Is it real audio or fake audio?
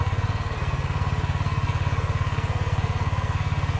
fake